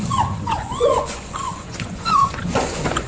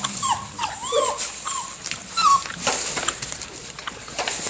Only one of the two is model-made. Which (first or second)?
first